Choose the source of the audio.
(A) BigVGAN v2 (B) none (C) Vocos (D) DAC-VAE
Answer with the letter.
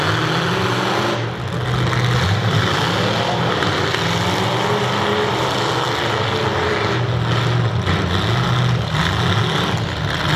B